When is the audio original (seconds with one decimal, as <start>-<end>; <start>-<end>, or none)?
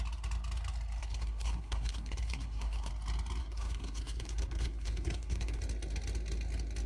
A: 0.0-1.0; 2.9-3.4; 5.6-6.9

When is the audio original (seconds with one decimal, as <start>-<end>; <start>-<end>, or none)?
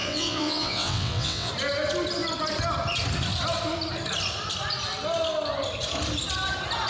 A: 1.5-6.9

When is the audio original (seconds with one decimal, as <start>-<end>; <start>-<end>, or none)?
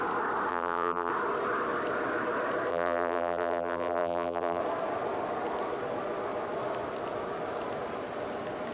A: 0.0-0.5; 1.1-2.7; 4.6-8.7